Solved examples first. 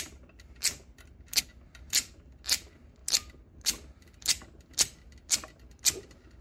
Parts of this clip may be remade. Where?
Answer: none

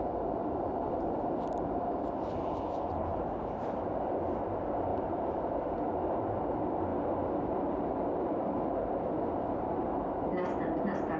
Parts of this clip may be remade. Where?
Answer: 0.0-4.0 (vocoder, BigVGAN v2); 4.9-5.6; 6.9-9.1

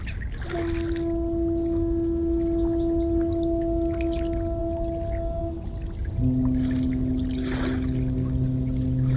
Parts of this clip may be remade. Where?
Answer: none

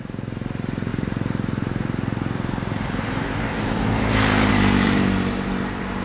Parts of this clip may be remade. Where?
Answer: 0.0-6.0 (vocoder, BigVGAN v2)

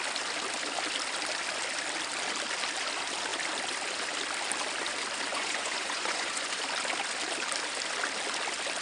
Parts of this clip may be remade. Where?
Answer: 5.3-6.6 (vocoder, Vocos)

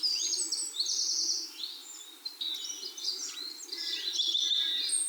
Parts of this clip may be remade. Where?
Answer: none

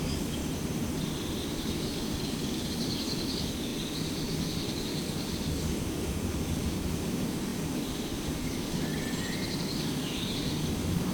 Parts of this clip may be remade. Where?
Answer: 0.0-0.4 (codec, DAC); 1.4-8.9; 9.6-11.1